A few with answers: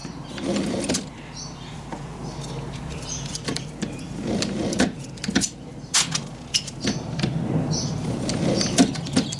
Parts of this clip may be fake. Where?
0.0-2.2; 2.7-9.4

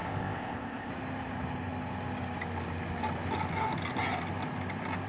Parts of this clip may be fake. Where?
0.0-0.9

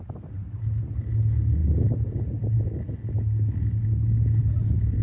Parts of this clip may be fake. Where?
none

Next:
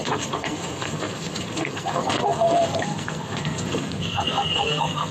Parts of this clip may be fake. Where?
0.0-5.1

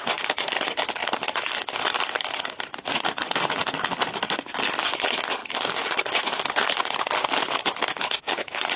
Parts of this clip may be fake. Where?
5.4-6.0

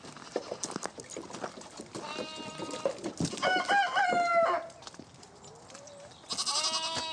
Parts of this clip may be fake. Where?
none

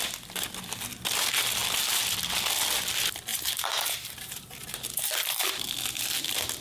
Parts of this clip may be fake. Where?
3.3-5.7